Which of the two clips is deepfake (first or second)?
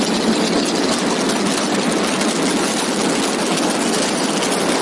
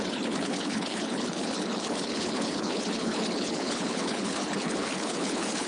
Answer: second